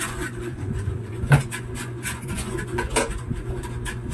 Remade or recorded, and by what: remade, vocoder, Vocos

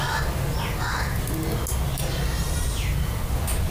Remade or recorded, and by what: recorded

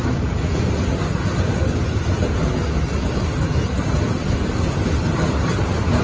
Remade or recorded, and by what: recorded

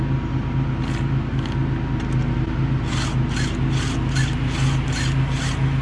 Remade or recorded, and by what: recorded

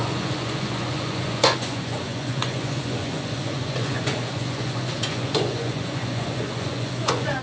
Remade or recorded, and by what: remade, vocoder, Vocos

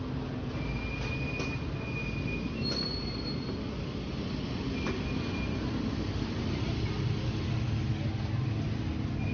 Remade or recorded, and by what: recorded